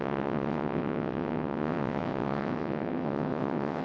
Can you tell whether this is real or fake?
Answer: fake